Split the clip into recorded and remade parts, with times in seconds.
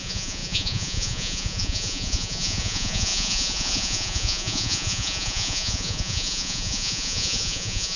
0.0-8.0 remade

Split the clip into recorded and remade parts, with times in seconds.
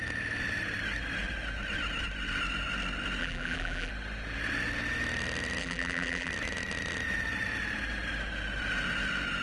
0.0-3.2 recorded; 3.2-3.9 remade; 3.9-5.6 recorded; 5.6-6.3 remade; 6.3-9.4 recorded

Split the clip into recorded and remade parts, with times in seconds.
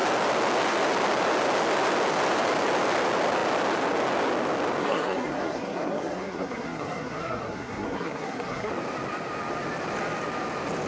0.0-4.8 recorded; 4.8-8.7 remade; 8.7-10.9 recorded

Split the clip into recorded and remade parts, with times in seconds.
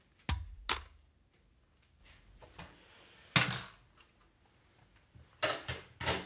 0.0-6.3 recorded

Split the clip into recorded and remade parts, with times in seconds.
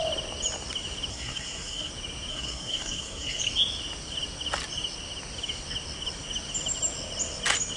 0.0-1.1 recorded; 1.1-1.9 remade; 1.9-2.3 recorded; 2.3-3.4 remade; 3.4-7.8 recorded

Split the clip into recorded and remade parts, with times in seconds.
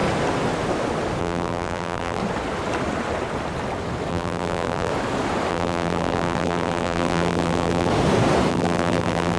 0.0-1.2 recorded; 1.2-2.2 remade; 2.2-4.1 recorded; 4.1-4.9 remade; 4.9-5.5 recorded; 5.5-7.9 remade; 7.9-8.5 recorded; 8.5-9.4 remade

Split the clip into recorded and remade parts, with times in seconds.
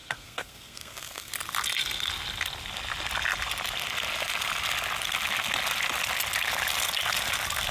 0.0-1.3 remade; 1.3-7.7 recorded